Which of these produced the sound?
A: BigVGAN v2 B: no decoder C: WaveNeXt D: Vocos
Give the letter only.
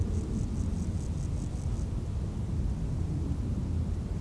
B